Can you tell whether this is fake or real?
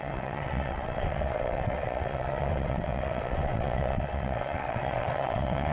fake